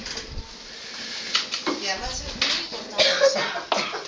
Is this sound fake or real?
real